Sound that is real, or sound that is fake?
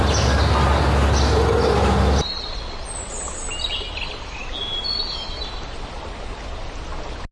real